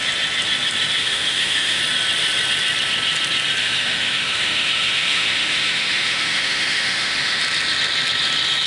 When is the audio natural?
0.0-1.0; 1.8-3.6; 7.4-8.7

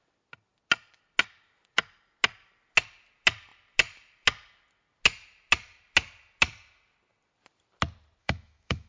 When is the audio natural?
0.0-8.2

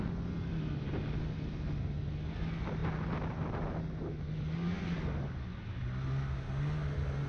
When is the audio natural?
0.0-7.3

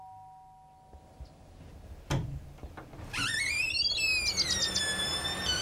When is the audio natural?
0.0-5.6